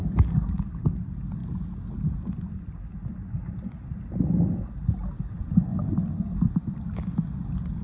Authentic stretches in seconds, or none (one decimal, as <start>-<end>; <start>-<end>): 0.0-7.8